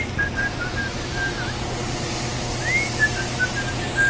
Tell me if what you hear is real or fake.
real